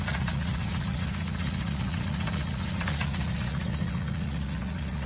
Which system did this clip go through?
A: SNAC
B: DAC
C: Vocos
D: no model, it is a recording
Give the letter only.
C